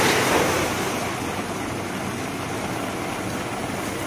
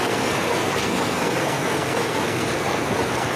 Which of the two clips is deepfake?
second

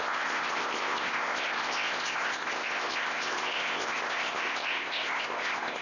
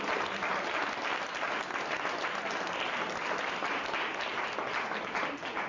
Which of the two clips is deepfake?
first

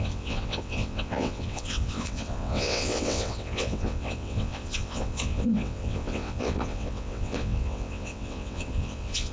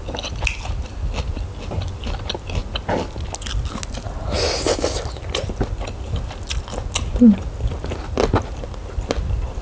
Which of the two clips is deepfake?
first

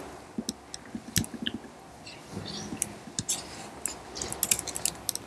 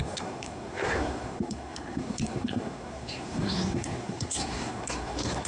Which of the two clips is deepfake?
second